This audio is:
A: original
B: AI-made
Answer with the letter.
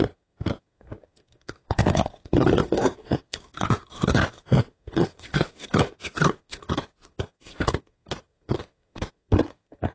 B